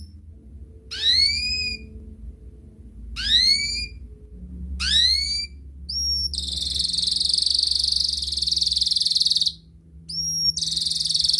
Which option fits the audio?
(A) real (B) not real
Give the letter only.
A